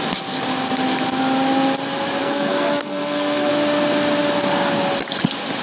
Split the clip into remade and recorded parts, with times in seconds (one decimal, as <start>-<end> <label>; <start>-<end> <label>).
0.0-2.2 recorded; 2.2-3.5 remade; 3.5-5.6 recorded